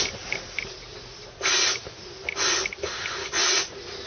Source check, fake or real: real